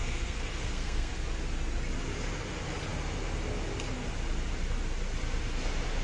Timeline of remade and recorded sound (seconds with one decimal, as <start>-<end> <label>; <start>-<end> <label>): 0.0-1.1 remade; 1.1-6.0 recorded